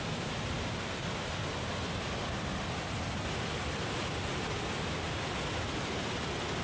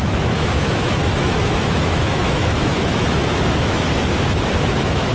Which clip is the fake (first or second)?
second